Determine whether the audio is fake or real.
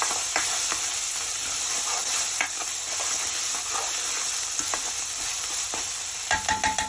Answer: real